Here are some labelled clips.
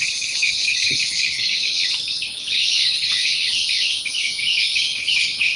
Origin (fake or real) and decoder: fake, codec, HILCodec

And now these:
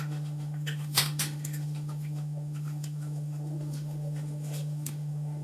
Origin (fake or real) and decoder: fake, autoencoder, DAC-VAE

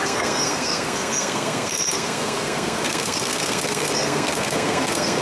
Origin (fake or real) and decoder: fake, codec, SNAC